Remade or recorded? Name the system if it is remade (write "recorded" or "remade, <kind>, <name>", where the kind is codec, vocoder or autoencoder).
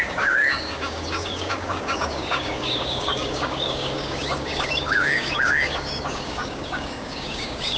remade, codec, DAC